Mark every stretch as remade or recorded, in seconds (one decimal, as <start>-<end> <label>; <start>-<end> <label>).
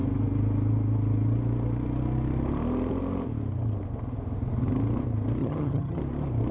0.0-5.4 recorded; 5.4-6.0 remade; 6.0-6.5 recorded